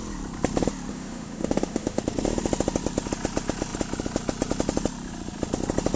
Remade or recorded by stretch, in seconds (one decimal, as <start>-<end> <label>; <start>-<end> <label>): 0.0-0.9 recorded; 0.9-2.0 remade; 2.0-6.0 recorded